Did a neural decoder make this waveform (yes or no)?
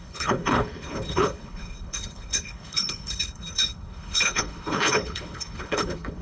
yes